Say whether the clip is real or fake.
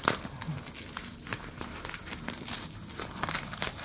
real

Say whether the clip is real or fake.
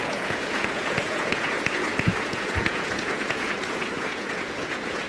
fake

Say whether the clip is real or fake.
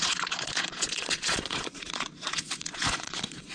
fake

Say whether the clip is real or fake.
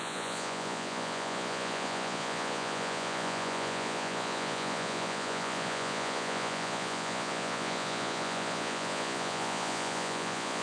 fake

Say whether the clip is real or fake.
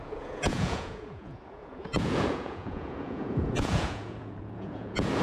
fake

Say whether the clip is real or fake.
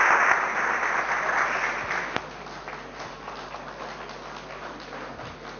real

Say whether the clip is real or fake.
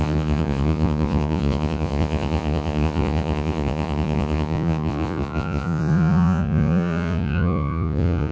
fake